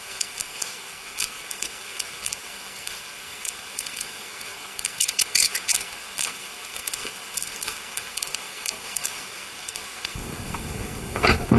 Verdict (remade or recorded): remade